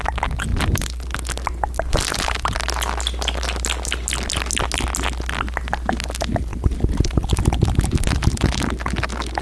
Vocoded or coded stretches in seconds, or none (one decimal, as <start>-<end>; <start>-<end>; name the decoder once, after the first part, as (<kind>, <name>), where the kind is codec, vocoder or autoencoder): none